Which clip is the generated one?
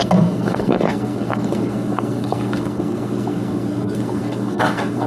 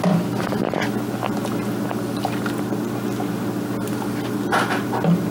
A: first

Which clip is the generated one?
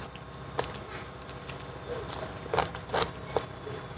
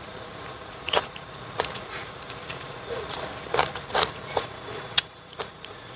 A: second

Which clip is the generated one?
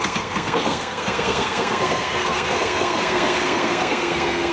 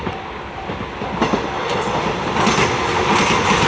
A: first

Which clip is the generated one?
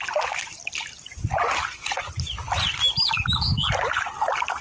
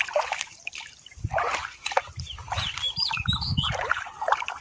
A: second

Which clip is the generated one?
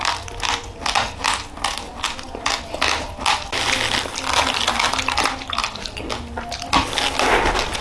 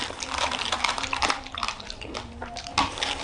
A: second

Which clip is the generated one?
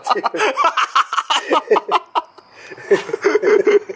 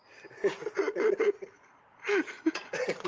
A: second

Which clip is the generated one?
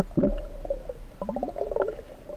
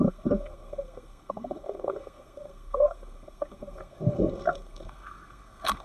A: second